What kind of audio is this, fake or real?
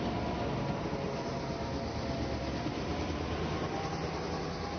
real